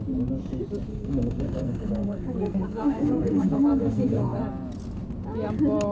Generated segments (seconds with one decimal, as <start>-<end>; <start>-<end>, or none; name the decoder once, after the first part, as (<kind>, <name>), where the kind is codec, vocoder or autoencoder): 0.9-4.4 (codec, SNAC)